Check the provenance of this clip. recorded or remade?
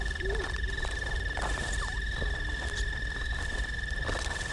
recorded